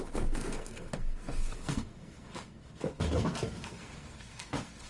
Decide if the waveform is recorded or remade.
remade